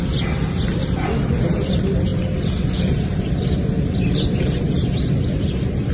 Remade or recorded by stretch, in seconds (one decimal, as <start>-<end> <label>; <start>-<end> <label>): 0.0-5.9 recorded